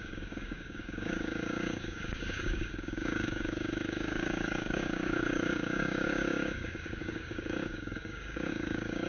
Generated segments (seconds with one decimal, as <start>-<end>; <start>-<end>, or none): 0.0-9.1